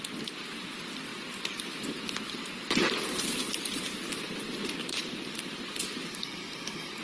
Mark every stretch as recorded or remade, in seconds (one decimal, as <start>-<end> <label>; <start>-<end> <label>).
0.0-6.1 recorded; 6.1-7.0 remade

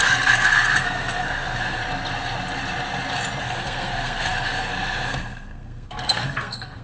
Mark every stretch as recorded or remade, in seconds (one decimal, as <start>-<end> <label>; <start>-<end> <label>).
0.0-1.8 remade; 1.8-3.4 recorded; 3.4-6.8 remade

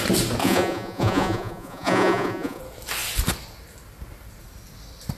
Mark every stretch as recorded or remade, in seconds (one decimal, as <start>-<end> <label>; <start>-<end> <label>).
0.0-0.4 recorded; 0.4-2.6 remade; 2.6-5.2 recorded

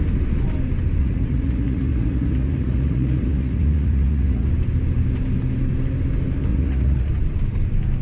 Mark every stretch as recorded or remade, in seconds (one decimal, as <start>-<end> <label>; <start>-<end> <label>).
0.0-1.0 recorded; 1.0-4.5 remade; 4.5-6.5 recorded; 6.5-7.1 remade; 7.1-8.0 recorded